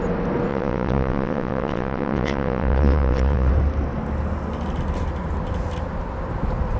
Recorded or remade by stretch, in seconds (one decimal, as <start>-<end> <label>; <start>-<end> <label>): 0.0-0.5 recorded; 0.5-3.5 remade; 3.5-6.8 recorded